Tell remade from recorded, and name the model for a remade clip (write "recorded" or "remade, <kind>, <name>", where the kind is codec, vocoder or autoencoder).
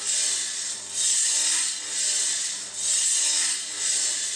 recorded